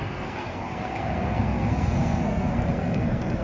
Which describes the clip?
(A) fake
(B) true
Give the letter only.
A